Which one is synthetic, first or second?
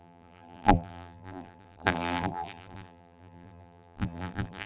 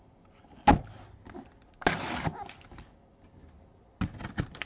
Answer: first